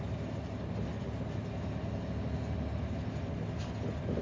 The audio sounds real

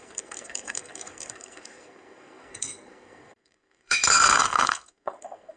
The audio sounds fake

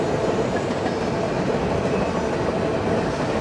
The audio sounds real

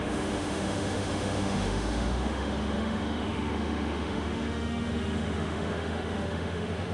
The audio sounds fake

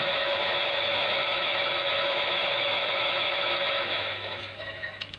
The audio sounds fake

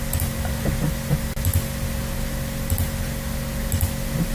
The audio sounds real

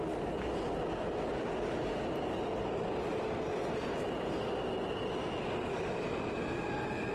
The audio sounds real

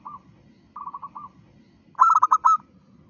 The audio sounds real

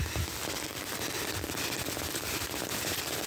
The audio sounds real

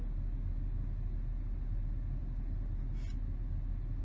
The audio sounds real